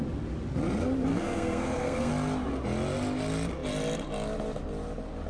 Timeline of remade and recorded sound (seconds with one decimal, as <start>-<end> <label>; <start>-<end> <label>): 0.0-1.1 recorded; 1.1-2.1 remade; 2.1-5.3 recorded